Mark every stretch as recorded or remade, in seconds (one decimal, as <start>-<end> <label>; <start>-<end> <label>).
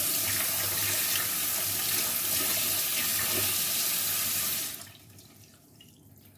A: 0.0-3.1 recorded; 3.1-6.4 remade